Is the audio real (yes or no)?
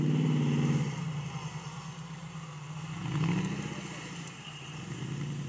yes